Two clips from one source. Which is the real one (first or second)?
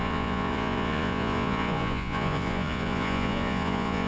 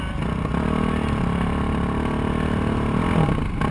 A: second